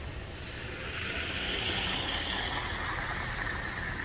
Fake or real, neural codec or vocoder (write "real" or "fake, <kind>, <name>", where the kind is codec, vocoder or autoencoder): real